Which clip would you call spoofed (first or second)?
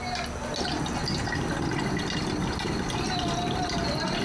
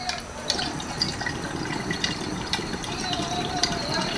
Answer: second